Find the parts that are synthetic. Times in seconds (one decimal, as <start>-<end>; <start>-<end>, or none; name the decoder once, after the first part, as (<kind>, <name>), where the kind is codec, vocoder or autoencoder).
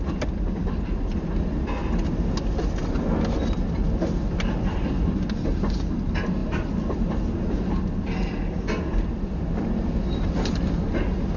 none